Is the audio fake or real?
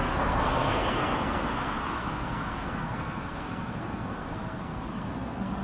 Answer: fake